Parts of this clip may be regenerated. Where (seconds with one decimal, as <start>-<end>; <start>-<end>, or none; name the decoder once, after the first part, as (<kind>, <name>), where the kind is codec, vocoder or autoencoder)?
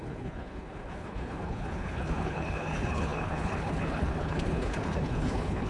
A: 0.0-5.7 (codec, HILCodec)